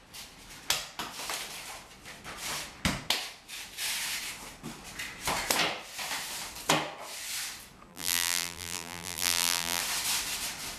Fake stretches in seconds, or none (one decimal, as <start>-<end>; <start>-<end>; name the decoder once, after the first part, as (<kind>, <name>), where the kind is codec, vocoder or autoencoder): 7.9-9.8 (vocoder, BigVGAN v2)